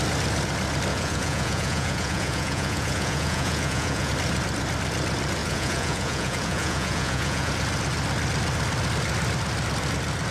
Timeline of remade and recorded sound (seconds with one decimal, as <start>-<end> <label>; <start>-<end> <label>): 0.0-0.9 recorded; 0.9-4.1 remade; 4.1-5.4 recorded; 5.4-7.5 remade; 7.5-10.3 recorded